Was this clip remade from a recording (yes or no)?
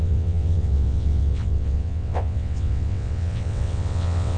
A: yes